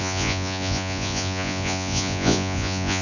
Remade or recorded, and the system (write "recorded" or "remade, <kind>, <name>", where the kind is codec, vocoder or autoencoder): remade, vocoder, Vocos